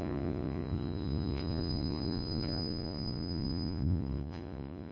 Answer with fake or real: fake